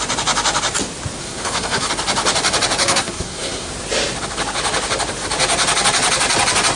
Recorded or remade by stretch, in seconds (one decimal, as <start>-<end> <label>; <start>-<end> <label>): 0.0-1.2 recorded; 1.2-1.9 remade; 1.9-2.8 recorded; 2.8-3.7 remade; 3.7-6.8 recorded